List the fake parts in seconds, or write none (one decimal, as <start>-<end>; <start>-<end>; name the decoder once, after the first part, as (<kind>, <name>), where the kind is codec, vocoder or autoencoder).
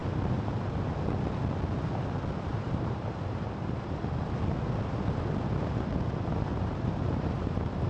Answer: 2.5-4.0 (vocoder, BigVGAN v2); 6.5-7.9